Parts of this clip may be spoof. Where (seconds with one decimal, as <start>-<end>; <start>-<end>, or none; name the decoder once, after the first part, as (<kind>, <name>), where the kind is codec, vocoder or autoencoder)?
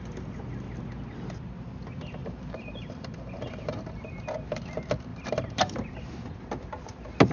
2.2-4.1 (vocoder, BigVGAN v2); 5.1-5.8